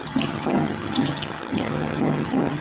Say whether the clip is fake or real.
fake